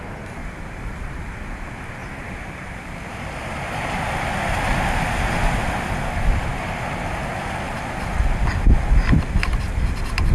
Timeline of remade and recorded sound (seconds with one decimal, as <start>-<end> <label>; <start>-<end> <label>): 0.0-0.4 recorded; 0.4-0.9 remade; 0.9-2.0 recorded; 2.0-3.8 remade; 3.8-10.3 recorded